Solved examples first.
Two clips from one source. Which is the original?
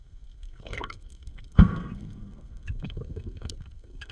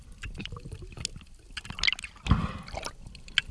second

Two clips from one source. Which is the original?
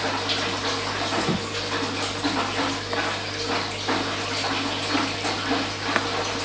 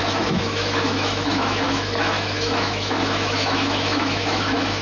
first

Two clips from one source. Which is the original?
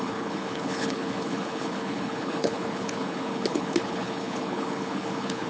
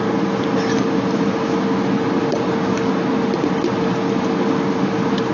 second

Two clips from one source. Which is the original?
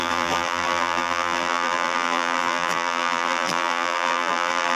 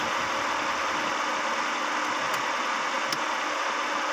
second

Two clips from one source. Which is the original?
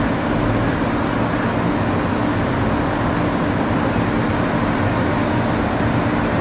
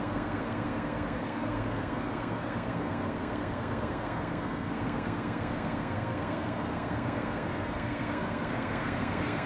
first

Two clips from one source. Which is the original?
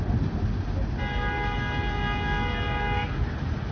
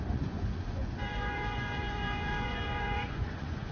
first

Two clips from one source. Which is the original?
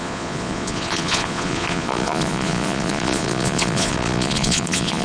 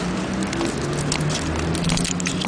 second